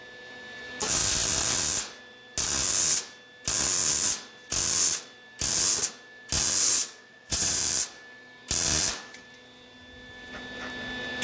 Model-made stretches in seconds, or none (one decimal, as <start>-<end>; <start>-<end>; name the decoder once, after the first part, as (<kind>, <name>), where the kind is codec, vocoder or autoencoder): 6.7-7.6 (vocoder, WaveNeXt)